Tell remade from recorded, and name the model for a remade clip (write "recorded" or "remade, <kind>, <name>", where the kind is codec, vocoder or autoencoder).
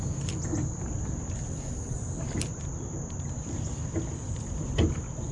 recorded